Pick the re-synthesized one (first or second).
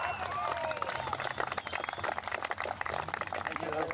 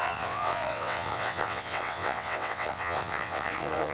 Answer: second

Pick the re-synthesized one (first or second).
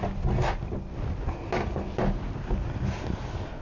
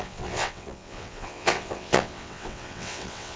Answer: second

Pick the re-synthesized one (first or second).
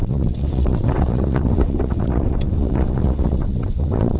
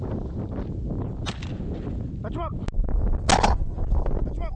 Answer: first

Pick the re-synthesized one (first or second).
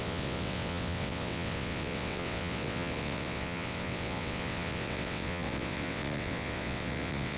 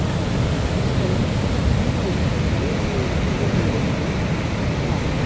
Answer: first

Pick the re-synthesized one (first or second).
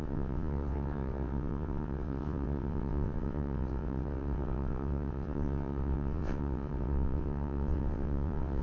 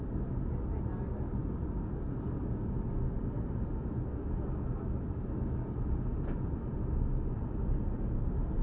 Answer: first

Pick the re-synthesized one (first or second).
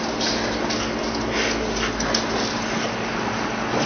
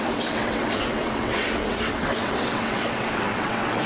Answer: second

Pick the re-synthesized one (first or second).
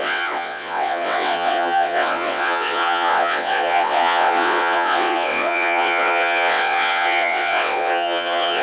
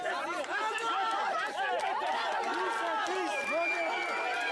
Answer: first